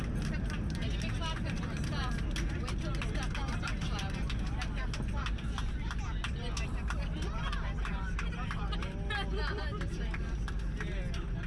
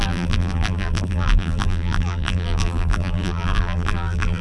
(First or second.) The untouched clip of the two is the first